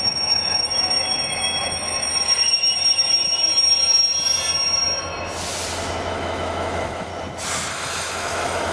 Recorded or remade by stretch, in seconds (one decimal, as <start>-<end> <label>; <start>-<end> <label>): 0.0-2.1 remade; 2.1-6.1 recorded; 6.1-7.1 remade; 7.1-7.7 recorded; 7.7-8.7 remade